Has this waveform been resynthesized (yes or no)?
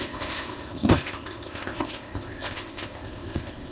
yes